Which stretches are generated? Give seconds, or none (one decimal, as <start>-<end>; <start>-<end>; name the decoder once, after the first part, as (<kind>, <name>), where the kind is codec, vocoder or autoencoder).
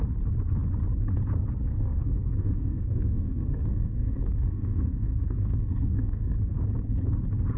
1.7-6.3 (codec, SNAC)